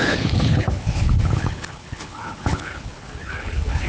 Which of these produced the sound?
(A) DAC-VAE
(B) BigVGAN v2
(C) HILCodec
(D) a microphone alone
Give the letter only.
C